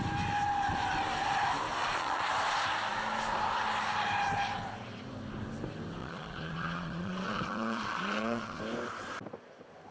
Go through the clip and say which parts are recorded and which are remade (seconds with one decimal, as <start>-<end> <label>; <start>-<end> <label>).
0.0-1.8 recorded; 1.8-2.3 remade; 2.3-6.0 recorded; 6.0-8.6 remade; 8.6-9.9 recorded